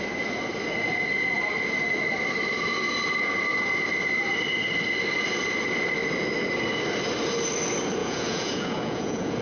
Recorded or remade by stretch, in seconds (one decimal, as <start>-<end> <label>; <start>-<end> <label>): 0.0-8.0 recorded; 8.0-9.4 remade